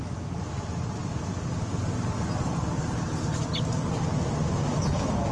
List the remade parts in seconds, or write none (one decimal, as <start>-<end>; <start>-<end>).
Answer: 4.4-5.3